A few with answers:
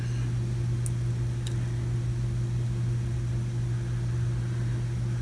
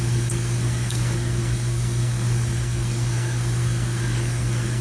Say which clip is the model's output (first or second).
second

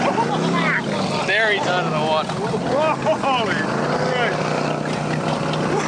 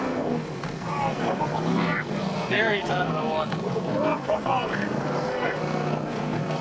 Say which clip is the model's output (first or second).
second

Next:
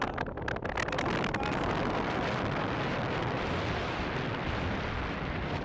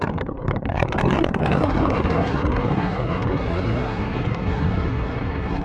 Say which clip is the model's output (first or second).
second